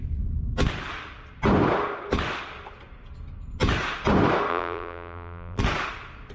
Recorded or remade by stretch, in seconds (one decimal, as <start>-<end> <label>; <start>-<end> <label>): 0.0-4.5 recorded; 4.5-5.6 remade; 5.6-6.3 recorded